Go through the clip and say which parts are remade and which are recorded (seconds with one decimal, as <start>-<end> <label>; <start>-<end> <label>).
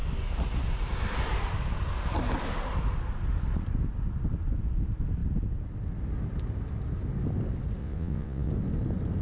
0.0-7.8 recorded; 7.8-8.5 remade; 8.5-9.2 recorded